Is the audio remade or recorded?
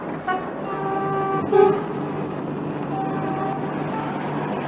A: recorded